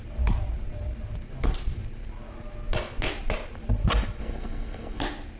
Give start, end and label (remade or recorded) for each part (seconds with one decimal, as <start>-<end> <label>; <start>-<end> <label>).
0.0-4.2 recorded; 4.2-5.0 remade; 5.0-5.4 recorded